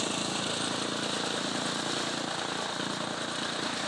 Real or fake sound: real